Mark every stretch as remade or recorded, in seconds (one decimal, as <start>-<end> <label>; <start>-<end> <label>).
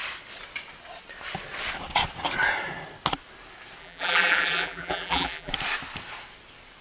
0.0-3.8 recorded; 3.8-5.5 remade; 5.5-6.8 recorded